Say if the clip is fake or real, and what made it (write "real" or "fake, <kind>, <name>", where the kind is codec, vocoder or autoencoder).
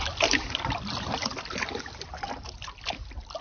fake, vocoder, BigVGAN v2